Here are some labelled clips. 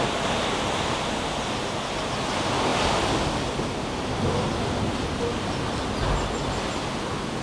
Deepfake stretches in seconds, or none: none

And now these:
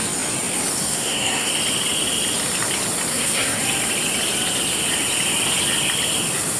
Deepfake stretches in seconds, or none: 0.8-1.5 (codec, SNAC); 3.1-3.6

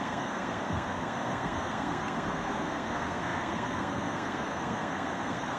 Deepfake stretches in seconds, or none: 0.0-5.6 (codec, SNAC)

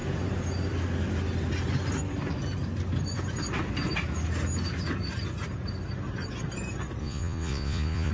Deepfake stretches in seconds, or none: 7.0-8.1 (vocoder, Vocos)